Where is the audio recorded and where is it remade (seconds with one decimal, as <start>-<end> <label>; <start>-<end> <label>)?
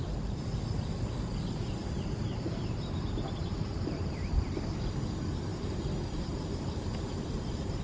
0.0-1.8 recorded; 1.8-4.4 remade; 4.4-5.5 recorded; 5.5-7.8 remade